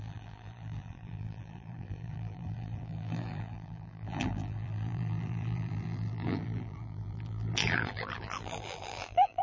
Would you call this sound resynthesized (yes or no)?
yes